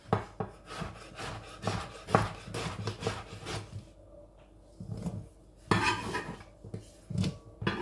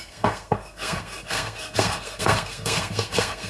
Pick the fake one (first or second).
second